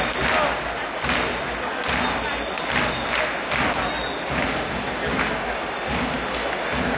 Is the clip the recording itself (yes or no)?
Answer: yes